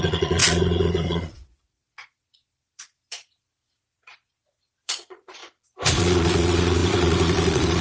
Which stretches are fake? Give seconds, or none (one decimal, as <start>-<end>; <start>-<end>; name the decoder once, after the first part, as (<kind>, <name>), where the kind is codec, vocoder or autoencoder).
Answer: 0.0-5.4 (vocoder, Vocos); 6.0-7.8